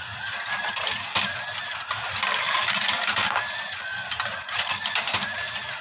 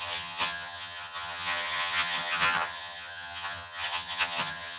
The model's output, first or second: second